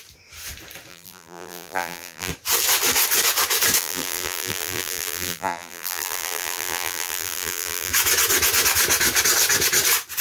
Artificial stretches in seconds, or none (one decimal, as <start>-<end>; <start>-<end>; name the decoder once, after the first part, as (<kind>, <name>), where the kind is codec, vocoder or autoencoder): 0.9-2.3 (vocoder, BigVGAN v2); 3.8-7.9